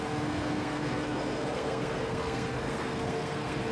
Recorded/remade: remade